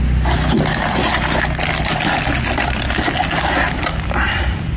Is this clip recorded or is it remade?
recorded